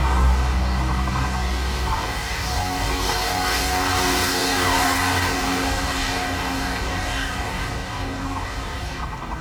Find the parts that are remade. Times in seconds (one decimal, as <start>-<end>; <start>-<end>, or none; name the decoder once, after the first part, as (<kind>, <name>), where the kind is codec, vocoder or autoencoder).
0.0-9.4 (codec, DAC)